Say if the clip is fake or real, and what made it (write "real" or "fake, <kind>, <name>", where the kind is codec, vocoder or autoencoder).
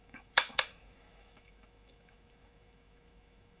fake, autoencoder, DAC-VAE